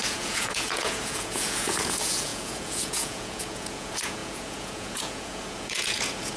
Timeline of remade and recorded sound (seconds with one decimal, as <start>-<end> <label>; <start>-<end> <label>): 0.0-6.4 remade